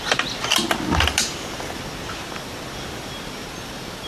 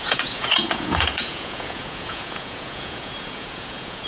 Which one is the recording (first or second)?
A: first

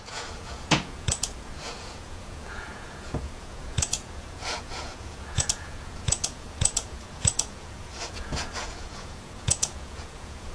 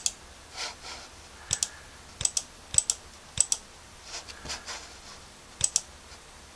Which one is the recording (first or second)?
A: second